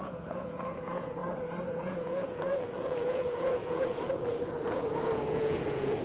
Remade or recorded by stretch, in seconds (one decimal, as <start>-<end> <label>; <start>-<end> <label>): 0.0-1.2 remade; 1.2-1.7 recorded; 1.7-6.0 remade